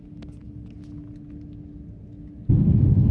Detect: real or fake real